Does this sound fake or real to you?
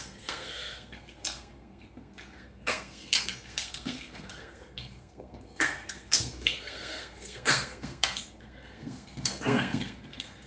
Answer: fake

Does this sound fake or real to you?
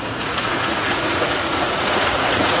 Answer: fake